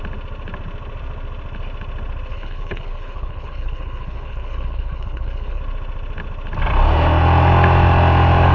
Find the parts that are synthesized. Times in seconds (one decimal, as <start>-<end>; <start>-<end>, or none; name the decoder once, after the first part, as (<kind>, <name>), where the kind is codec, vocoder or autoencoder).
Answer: 2.3-5.6 (codec, HILCodec)